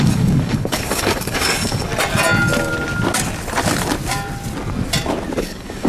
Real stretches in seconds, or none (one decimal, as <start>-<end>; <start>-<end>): 1.9-5.4